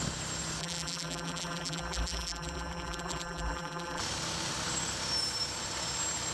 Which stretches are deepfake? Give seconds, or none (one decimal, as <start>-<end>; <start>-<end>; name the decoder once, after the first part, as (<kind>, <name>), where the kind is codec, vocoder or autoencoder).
0.6-4.0 (vocoder, BigVGAN v2)